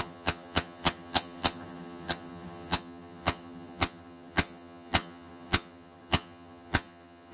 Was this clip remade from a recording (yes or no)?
yes